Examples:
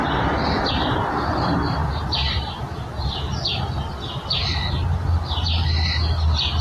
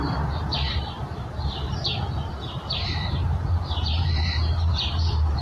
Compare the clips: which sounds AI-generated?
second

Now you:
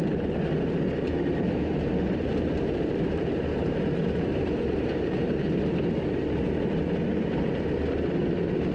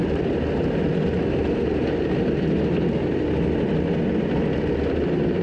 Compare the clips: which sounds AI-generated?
first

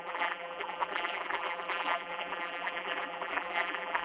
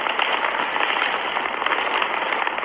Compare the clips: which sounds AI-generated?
first